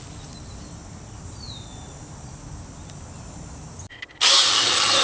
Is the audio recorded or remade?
recorded